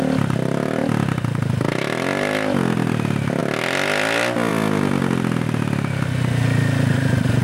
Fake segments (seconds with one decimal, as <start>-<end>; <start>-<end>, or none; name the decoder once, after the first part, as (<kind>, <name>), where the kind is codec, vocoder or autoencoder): none

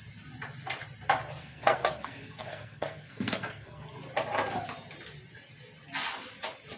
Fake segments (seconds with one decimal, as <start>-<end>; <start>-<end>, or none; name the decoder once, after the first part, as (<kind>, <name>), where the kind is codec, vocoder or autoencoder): 1.4-3.8 (codec, SNAC)

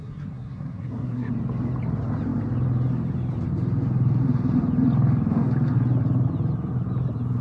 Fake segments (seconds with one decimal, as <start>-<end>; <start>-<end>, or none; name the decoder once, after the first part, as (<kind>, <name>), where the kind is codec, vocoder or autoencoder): 0.0-1.3 (codec, SNAC)

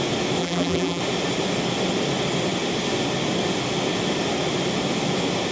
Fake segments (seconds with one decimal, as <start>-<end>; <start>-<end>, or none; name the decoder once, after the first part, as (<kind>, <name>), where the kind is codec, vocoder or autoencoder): 0.4-1.0 (vocoder, BigVGAN v2)

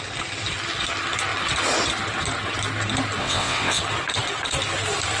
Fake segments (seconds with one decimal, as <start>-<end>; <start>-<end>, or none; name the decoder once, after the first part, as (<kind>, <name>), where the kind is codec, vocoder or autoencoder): 3.2-3.8 (vocoder, WaveNeXt)

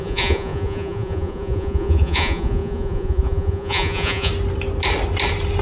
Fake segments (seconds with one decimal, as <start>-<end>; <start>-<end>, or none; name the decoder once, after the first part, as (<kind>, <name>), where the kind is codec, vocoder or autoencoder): 0.0-4.3 (vocoder, Vocos)

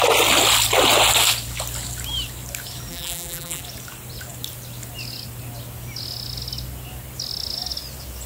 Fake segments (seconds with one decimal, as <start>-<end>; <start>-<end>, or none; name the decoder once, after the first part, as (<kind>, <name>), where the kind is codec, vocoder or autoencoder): 2.9-3.6 (vocoder, BigVGAN v2)